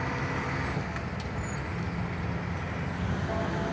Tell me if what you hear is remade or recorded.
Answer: recorded